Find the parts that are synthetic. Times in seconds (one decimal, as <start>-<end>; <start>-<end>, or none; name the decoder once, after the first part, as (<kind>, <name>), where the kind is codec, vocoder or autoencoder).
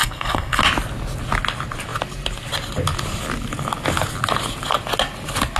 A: 0.0-0.6 (codec, SNAC)